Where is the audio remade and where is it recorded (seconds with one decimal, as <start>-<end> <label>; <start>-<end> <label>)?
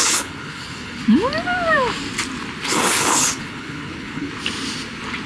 0.0-1.0 remade; 1.0-2.7 recorded; 2.7-4.3 remade; 4.3-5.3 recorded